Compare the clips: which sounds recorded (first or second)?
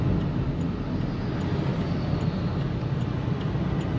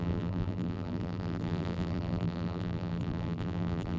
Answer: first